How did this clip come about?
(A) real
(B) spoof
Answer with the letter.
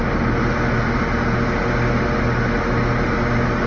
A